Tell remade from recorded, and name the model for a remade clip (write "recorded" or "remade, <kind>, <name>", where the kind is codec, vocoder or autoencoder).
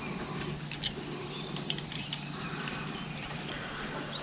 recorded